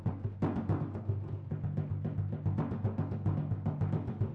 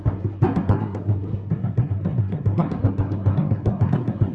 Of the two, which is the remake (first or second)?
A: second